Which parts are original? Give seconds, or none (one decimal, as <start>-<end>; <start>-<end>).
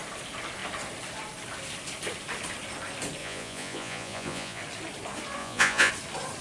0.0-3.2; 4.6-5.4; 5.9-6.4